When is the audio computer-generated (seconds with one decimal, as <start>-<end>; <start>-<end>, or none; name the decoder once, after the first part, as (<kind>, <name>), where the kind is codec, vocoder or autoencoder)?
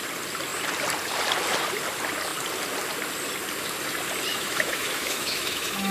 4.3-5.9 (autoencoder, DAC-VAE)